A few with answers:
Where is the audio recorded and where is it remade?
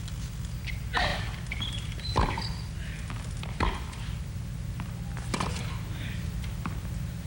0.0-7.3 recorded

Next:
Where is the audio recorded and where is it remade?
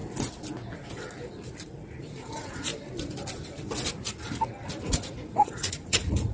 0.0-2.0 recorded; 2.0-2.7 remade; 2.7-4.8 recorded; 4.8-6.3 remade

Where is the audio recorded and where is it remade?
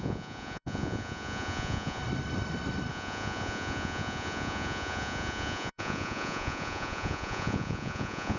0.0-2.0 remade; 2.0-2.9 recorded; 2.9-8.4 remade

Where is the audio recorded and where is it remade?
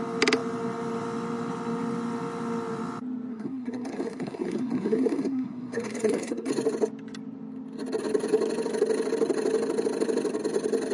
0.0-3.3 recorded; 3.3-6.5 remade; 6.5-10.9 recorded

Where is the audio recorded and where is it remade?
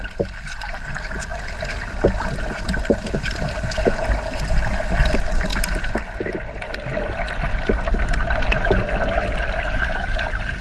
0.0-10.6 recorded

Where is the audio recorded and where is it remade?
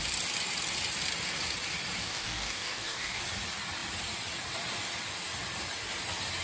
0.0-2.0 recorded; 2.0-3.2 remade; 3.2-6.4 recorded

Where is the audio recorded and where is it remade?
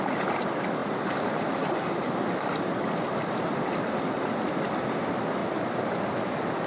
0.0-6.7 recorded